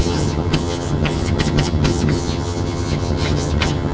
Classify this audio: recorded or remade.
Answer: remade